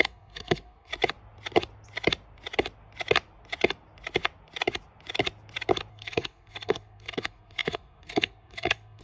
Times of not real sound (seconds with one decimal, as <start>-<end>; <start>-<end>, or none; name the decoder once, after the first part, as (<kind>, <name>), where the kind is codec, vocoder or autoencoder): 0.0-0.9 (codec, SNAC); 5.9-9.0